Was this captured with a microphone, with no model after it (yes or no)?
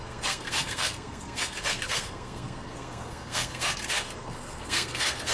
no